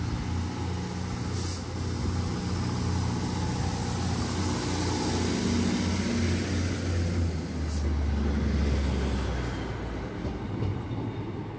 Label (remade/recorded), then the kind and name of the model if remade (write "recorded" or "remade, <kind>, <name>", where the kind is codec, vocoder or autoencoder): recorded